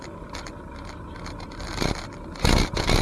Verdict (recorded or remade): recorded